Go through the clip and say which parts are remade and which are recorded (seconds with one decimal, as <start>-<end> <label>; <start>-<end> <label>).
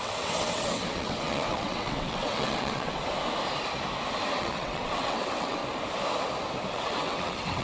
0.0-3.0 remade; 3.0-4.4 recorded; 4.4-5.6 remade; 5.6-6.7 recorded; 6.7-7.6 remade